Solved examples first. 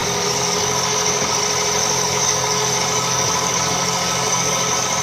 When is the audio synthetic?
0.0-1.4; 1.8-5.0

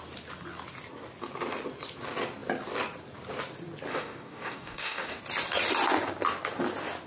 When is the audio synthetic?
3.9-5.2

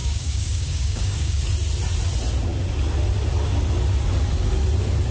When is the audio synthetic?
0.0-1.4

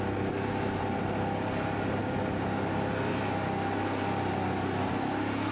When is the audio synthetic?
none